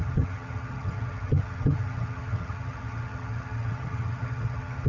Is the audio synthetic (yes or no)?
yes